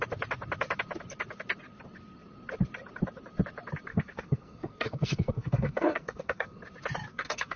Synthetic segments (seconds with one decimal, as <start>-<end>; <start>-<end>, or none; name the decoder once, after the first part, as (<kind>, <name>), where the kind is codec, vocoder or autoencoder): 3.9-6.6 (codec, SNAC); 7.1-7.6